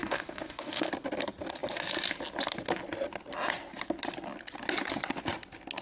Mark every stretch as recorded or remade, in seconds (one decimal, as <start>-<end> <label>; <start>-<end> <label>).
0.0-0.9 remade; 0.9-5.8 recorded